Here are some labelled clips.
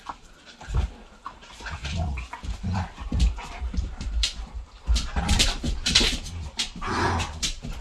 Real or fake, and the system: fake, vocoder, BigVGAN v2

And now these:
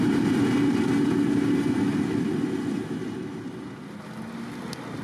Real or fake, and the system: real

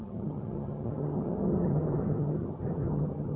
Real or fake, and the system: fake, vocoder, HiFi-GAN